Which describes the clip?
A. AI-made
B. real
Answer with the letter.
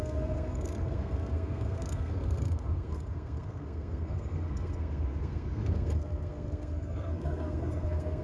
A